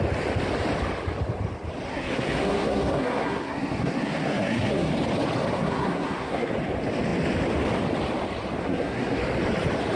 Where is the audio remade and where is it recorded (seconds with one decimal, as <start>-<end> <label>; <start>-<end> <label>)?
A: 0.0-1.9 recorded; 1.9-4.9 remade; 4.9-5.5 recorded; 5.5-6.5 remade; 6.5-8.6 recorded; 8.6-9.2 remade; 9.2-10.0 recorded